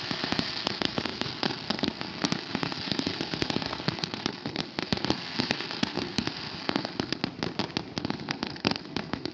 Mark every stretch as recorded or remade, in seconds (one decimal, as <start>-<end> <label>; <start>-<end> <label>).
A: 0.0-7.2 remade; 7.2-8.0 recorded; 8.0-9.3 remade

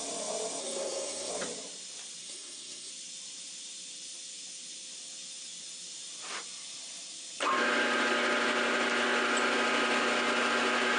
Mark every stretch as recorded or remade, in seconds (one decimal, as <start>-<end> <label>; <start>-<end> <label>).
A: 0.0-0.6 recorded; 0.6-1.3 remade; 1.3-2.2 recorded; 2.2-2.9 remade; 2.9-11.0 recorded

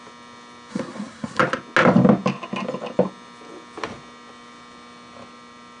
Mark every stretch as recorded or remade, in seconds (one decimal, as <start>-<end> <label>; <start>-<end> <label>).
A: 0.0-0.7 recorded; 0.7-1.4 remade; 1.4-5.8 recorded

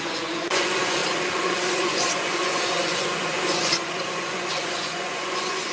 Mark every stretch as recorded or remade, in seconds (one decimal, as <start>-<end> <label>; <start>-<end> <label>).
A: 0.0-1.0 remade; 1.0-1.7 recorded; 1.7-5.7 remade

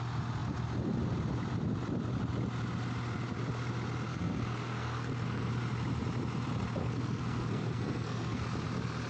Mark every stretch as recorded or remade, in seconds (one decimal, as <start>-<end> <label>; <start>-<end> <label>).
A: 0.0-4.1 recorded; 4.1-5.5 remade; 5.5-6.8 recorded; 6.8-8.4 remade; 8.4-9.1 recorded